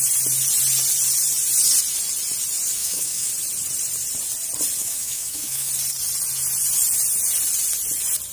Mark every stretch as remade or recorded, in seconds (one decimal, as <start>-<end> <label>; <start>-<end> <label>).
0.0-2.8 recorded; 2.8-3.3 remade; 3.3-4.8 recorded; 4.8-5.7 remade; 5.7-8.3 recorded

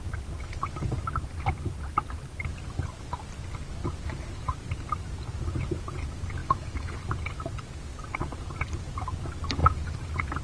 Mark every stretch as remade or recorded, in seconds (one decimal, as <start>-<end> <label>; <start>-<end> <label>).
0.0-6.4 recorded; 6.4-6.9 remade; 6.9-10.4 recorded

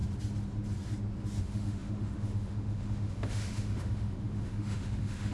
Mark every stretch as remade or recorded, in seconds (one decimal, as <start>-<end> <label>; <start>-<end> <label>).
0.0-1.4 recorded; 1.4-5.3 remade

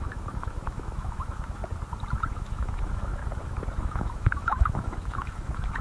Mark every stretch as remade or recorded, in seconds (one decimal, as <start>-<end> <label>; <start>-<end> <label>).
0.0-1.6 remade; 1.6-2.3 recorded; 2.3-3.2 remade; 3.2-3.8 recorded; 3.8-5.8 remade